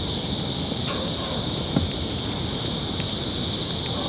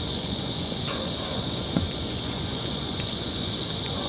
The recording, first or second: first